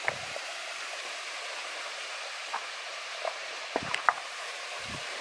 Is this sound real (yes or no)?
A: no